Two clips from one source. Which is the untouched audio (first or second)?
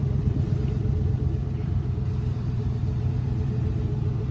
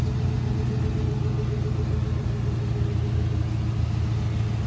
second